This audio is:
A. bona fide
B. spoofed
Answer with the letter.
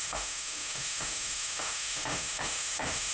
B